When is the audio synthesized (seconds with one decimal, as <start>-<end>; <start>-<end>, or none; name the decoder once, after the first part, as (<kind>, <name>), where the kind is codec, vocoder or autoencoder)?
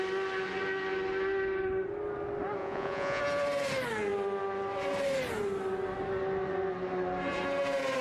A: 2.6-3.2 (vocoder, Vocos)